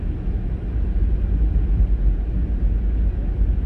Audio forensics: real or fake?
real